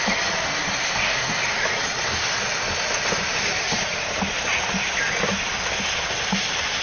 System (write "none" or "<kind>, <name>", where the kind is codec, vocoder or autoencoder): none